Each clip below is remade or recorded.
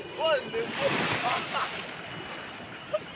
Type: recorded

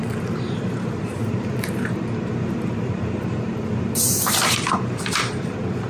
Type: remade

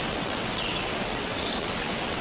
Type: remade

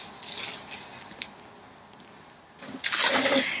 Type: recorded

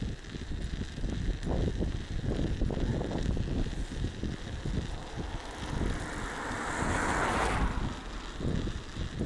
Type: recorded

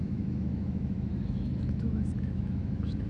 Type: remade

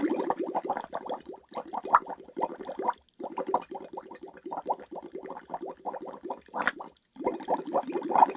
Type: recorded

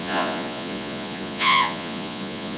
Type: remade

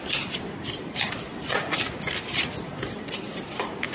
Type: remade